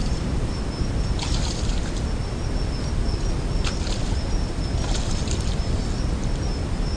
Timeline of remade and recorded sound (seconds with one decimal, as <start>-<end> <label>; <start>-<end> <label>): 0.0-0.6 remade; 0.6-7.0 recorded